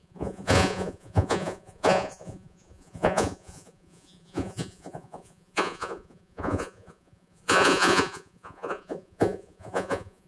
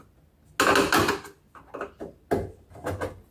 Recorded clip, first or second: second